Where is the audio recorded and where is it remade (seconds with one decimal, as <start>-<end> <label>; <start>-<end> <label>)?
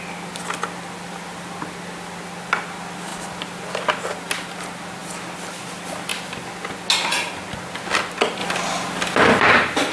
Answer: 0.0-9.9 recorded